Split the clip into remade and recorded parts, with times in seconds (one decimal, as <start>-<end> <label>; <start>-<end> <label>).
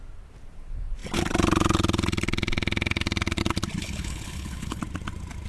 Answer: 0.0-3.8 recorded; 3.8-4.8 remade; 4.8-5.5 recorded